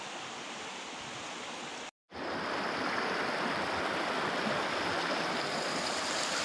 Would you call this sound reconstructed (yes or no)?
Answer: no